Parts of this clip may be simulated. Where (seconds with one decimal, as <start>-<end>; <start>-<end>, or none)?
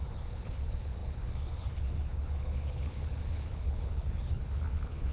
0.0-5.1